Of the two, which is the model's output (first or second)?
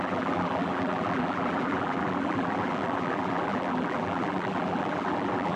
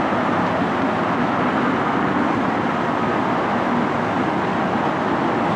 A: first